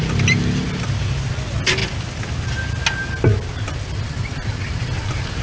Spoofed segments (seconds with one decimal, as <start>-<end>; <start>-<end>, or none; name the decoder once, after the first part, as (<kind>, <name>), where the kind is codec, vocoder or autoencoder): none